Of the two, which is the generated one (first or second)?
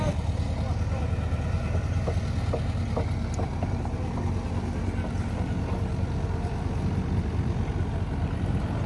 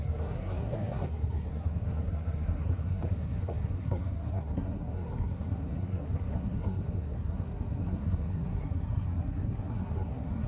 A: second